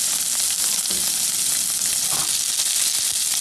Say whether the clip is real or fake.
real